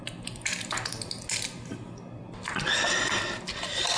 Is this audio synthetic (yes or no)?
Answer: no